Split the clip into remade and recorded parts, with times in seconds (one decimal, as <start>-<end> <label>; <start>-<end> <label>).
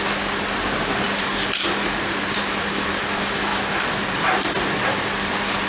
0.0-1.3 remade; 1.3-2.4 recorded; 2.4-3.5 remade; 3.5-4.1 recorded; 4.1-5.7 remade